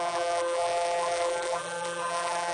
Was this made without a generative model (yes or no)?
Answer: no